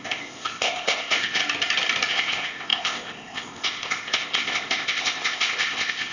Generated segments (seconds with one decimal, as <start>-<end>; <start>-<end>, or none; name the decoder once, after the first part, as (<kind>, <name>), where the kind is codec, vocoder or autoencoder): 0.0-1.4 (codec, ZipCodec); 2.1-6.1